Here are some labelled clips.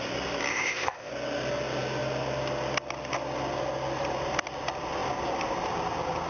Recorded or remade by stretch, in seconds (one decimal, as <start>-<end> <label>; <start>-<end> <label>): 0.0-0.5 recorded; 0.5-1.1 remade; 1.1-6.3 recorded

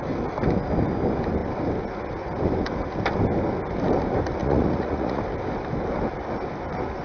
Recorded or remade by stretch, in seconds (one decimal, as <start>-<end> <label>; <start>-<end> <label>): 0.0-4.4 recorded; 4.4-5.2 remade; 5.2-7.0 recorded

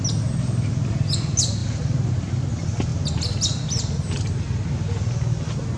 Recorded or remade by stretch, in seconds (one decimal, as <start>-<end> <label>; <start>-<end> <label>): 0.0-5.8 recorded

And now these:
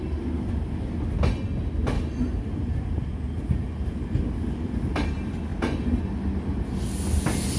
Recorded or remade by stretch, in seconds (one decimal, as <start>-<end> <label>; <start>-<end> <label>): 0.0-5.5 recorded; 5.5-6.0 remade; 6.0-7.6 recorded

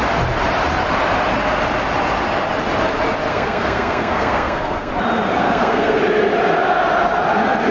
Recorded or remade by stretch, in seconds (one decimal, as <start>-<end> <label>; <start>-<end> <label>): 0.0-3.3 recorded; 3.3-4.9 remade; 4.9-5.4 recorded; 5.4-6.0 remade; 6.0-7.7 recorded

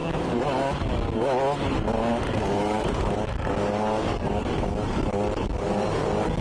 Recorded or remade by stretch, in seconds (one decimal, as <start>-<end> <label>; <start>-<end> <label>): 0.0-1.4 remade; 1.4-2.1 recorded; 2.1-5.6 remade; 5.6-6.4 recorded

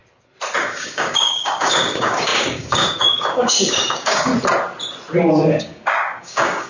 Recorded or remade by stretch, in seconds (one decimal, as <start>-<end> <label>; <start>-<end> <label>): 0.0-0.6 recorded; 0.6-4.3 remade; 4.3-5.6 recorded; 5.6-6.7 remade

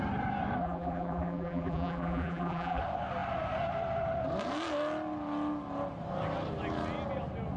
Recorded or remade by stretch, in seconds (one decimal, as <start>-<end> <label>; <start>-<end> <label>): 0.0-0.6 recorded; 0.6-2.8 remade; 2.8-7.6 recorded